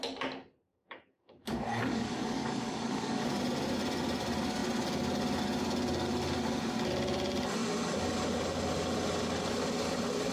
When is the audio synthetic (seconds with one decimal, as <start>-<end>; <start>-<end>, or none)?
0.7-3.4